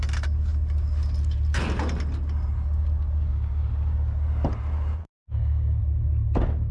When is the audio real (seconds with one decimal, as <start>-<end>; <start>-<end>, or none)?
0.0-5.0; 5.8-6.7